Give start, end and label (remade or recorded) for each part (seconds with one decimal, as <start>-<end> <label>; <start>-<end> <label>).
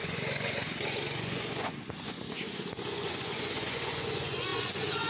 0.0-5.1 remade